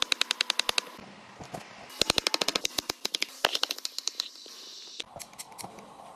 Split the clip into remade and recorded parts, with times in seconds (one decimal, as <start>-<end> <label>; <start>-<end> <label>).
0.0-6.2 recorded